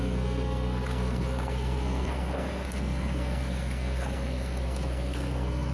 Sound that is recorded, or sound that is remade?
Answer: remade